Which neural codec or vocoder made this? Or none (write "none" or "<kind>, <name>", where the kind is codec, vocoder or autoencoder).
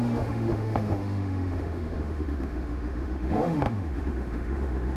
autoencoder, DAC-VAE